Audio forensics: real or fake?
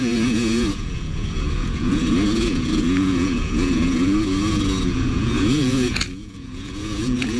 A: fake